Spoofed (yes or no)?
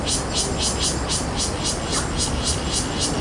no